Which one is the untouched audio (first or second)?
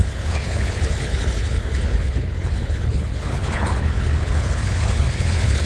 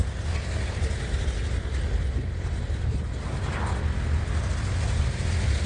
second